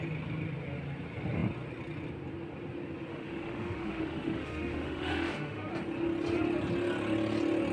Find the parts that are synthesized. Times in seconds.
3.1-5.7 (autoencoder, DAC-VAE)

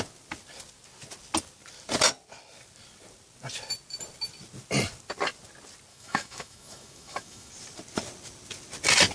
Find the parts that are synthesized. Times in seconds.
5.9-7.5 (autoencoder, DAC-VAE)

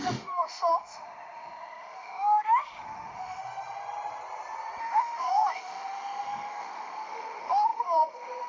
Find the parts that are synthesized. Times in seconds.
0.0-3.4 (autoencoder, DAC-VAE); 4.8-8.5

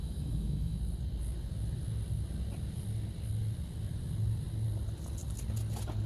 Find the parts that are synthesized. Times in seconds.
0.0-0.8 (autoencoder, DAC-VAE)